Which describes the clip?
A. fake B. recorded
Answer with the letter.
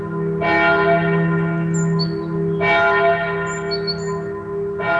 B